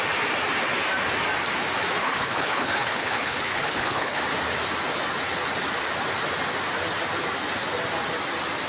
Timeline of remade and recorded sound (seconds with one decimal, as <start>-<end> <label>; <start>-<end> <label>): 0.0-2.0 recorded; 2.0-4.2 remade; 4.2-8.7 recorded

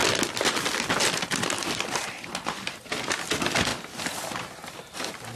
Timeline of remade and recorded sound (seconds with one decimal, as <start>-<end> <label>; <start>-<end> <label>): 0.0-3.2 remade; 3.2-3.7 recorded; 3.7-5.0 remade; 5.0-5.4 recorded

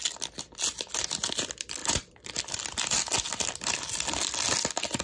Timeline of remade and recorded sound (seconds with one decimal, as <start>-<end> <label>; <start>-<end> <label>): 0.0-5.0 recorded

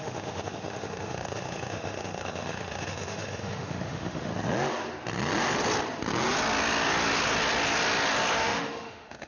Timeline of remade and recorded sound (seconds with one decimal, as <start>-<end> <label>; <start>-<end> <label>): 0.0-4.3 remade; 4.3-8.4 recorded; 8.4-9.3 remade